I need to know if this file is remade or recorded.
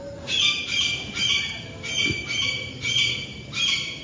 recorded